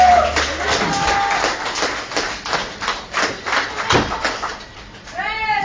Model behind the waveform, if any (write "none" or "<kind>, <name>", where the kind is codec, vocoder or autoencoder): none